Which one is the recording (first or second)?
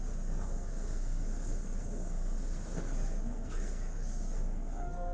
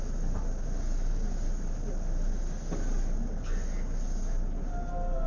second